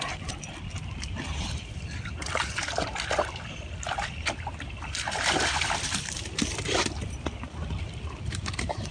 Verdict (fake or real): fake